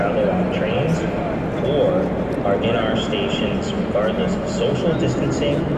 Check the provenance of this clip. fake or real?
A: real